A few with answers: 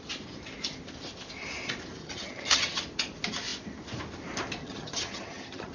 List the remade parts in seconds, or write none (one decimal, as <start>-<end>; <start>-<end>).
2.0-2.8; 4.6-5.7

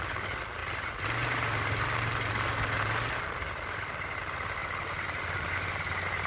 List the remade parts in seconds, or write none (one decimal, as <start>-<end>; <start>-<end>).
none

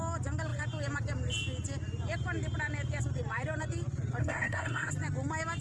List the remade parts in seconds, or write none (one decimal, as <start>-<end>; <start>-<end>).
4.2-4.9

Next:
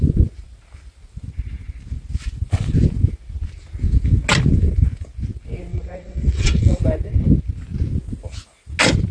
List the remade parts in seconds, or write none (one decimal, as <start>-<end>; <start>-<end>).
5.7-6.8

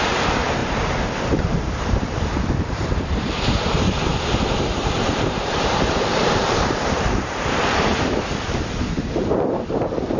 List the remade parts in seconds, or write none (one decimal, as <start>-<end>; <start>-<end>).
0.0-4.1; 4.8-7.9; 9.7-10.2

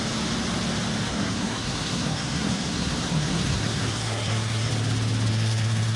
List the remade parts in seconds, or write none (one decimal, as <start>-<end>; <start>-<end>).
1.1-4.7; 5.3-6.0